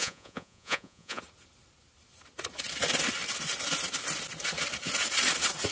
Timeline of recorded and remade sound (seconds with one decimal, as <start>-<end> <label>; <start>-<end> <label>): 0.0-1.2 remade; 1.2-5.7 recorded